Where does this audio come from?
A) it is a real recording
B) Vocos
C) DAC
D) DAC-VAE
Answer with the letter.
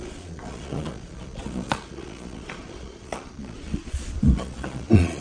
B